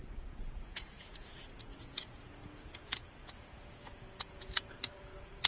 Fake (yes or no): yes